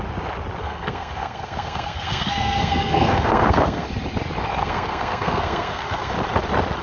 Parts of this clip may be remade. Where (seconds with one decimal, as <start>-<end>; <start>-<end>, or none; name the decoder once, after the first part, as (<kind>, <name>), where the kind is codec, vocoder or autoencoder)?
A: 0.6-3.9 (codec, SNAC); 4.6-6.1